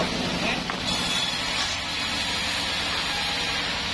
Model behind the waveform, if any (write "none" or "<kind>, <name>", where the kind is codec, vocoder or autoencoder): none